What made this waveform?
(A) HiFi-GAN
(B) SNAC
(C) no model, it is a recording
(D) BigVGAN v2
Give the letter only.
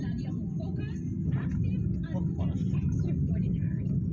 C